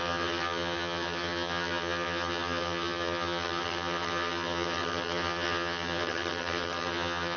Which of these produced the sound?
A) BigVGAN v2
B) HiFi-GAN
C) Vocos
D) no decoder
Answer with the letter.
B